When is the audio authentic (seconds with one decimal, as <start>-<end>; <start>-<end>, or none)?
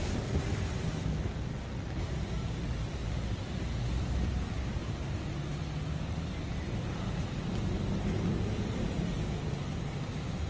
0.0-10.5